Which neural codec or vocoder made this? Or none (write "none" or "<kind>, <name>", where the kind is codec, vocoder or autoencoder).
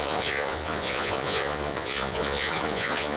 vocoder, Vocos